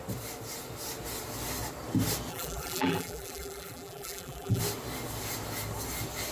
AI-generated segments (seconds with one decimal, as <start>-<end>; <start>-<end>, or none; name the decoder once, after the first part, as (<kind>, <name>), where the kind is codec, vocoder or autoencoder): 2.3-4.6 (vocoder, BigVGAN v2)